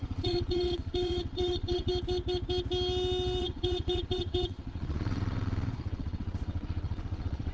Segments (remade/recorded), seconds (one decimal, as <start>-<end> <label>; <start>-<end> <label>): 0.0-1.9 remade; 1.9-3.4 recorded; 3.4-7.5 remade